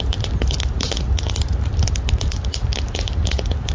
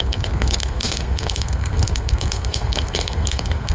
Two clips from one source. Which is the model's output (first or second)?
second